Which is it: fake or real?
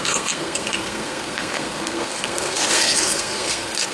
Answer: fake